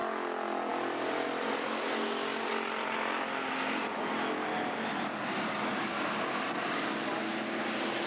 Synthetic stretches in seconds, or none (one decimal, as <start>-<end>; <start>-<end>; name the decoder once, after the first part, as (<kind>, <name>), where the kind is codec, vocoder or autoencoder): none